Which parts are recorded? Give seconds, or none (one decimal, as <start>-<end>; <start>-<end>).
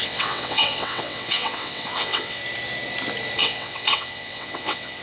2.4-3.4